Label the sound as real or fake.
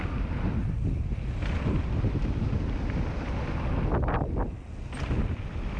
real